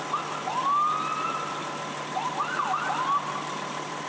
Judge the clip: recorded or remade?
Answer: recorded